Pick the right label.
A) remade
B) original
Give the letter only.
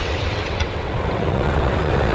A